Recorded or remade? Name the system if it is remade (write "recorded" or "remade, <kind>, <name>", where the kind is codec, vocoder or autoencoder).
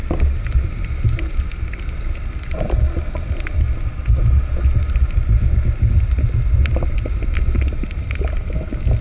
recorded